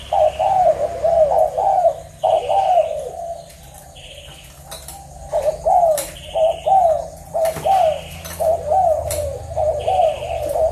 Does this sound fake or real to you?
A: real